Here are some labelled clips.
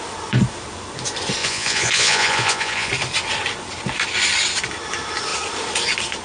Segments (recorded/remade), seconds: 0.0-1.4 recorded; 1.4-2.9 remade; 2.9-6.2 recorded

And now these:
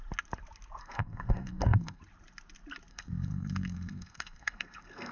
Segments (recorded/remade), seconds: 0.0-0.8 recorded; 0.8-2.0 remade; 2.0-2.9 recorded; 2.9-5.1 remade

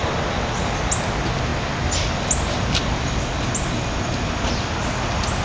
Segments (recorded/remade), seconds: 0.0-5.4 recorded

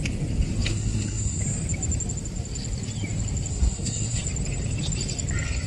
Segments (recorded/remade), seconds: 0.0-0.7 recorded; 0.7-1.4 remade; 1.4-3.5 recorded; 3.5-4.2 remade; 4.2-5.7 recorded